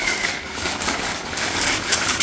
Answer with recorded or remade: remade